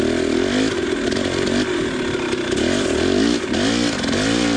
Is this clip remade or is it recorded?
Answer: recorded